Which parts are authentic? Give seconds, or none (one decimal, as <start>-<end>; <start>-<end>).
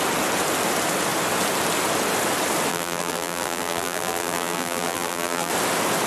0.0-2.7; 5.5-6.1